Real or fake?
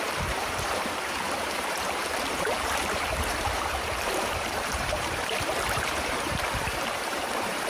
fake